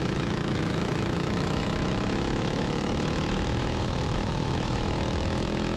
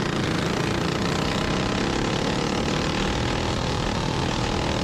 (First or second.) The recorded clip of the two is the second